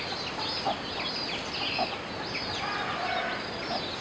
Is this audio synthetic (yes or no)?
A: no